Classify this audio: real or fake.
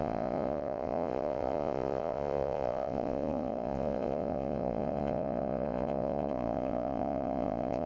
fake